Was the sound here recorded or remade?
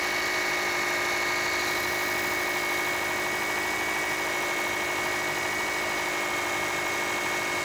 recorded